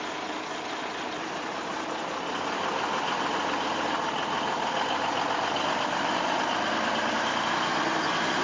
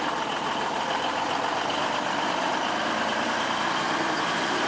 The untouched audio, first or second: first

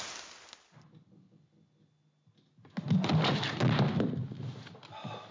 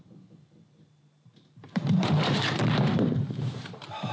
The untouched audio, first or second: first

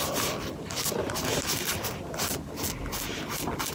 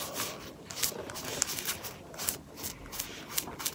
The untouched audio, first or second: first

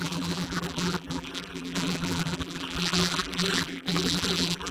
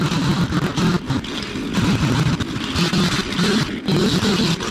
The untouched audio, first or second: second